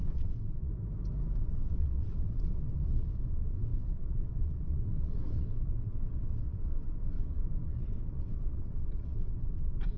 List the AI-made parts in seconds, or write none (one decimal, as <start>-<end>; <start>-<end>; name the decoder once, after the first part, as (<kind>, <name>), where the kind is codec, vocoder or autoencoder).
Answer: 0.0-0.7 (vocoder, WaveNeXt); 1.4-10.0